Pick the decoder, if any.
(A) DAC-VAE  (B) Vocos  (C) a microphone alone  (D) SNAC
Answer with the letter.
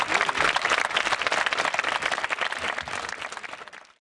C